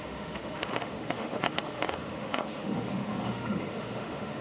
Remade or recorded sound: remade